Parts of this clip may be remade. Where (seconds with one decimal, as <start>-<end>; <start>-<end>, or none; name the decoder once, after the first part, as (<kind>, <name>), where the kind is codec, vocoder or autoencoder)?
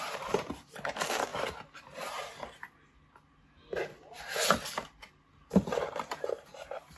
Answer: 0.0-1.3 (vocoder, BigVGAN v2); 5.5-7.0